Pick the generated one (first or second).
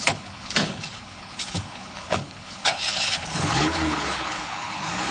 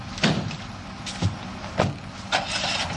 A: first